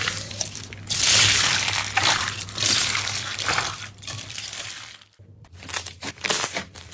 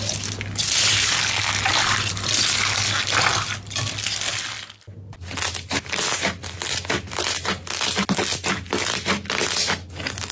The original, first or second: second